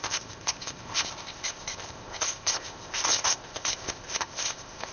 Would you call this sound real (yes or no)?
no